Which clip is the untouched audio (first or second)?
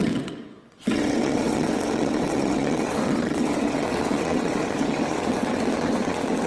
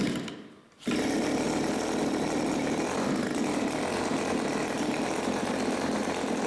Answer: second